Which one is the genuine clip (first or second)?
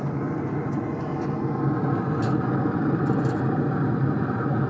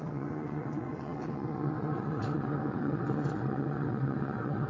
first